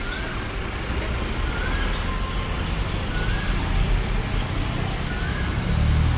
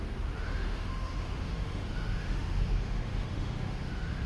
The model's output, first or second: second